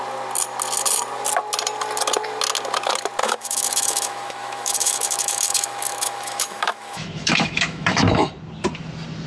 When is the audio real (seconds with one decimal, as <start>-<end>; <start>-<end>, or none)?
0.0-3.2; 8.3-9.3